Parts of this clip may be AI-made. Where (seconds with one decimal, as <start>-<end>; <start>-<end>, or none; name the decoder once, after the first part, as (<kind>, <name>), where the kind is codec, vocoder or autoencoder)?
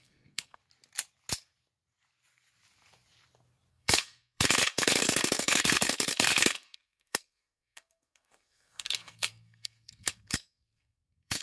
0.0-0.6 (codec, SNAC); 3.7-11.4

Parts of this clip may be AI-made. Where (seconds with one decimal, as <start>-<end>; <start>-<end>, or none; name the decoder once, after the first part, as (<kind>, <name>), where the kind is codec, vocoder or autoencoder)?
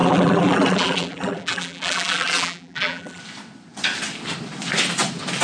0.0-3.2 (vocoder, BigVGAN v2)